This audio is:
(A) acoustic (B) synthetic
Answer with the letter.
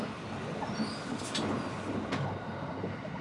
A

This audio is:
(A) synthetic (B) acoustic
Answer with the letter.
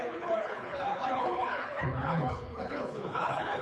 A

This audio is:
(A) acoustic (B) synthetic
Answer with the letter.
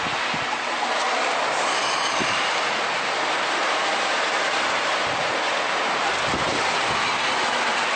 A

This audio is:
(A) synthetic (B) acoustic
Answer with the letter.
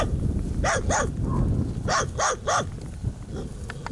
B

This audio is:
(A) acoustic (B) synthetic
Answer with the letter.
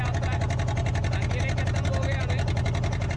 A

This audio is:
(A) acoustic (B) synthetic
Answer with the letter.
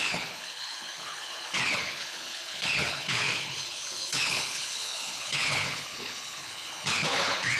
B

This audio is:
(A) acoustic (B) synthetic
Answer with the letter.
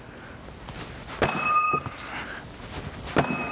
A